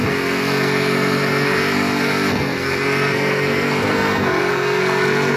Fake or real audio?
fake